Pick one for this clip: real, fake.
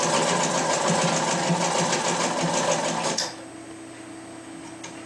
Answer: real